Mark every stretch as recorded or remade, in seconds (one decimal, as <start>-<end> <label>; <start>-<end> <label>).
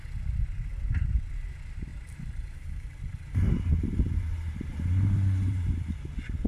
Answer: 0.0-1.9 recorded; 1.9-5.8 remade; 5.8-6.5 recorded